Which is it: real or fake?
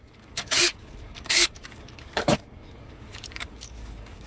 fake